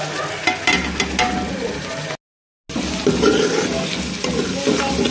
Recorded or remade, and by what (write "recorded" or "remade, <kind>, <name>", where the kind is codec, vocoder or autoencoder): recorded